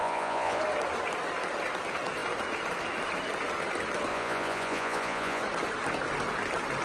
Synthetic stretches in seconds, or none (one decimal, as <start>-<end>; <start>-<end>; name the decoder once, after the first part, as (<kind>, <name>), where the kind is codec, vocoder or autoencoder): 0.0-0.6 (vocoder, Vocos); 4.1-5.4